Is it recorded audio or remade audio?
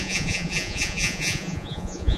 remade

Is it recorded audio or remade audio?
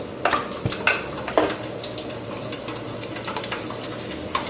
recorded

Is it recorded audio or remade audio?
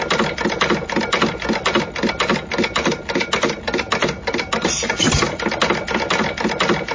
recorded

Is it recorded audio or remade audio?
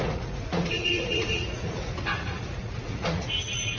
remade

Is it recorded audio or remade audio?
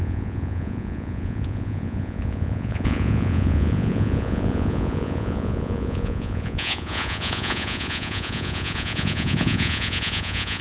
remade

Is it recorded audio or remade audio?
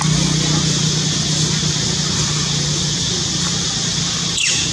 recorded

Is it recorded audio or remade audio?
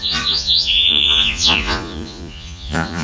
remade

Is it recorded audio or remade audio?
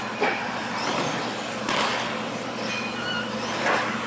recorded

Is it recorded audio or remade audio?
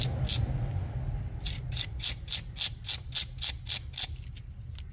recorded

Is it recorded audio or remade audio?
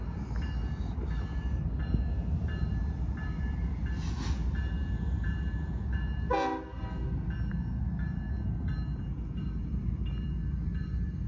recorded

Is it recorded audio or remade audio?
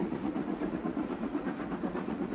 remade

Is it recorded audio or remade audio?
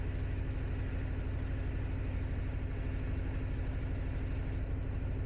recorded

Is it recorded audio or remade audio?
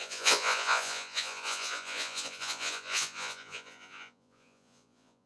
remade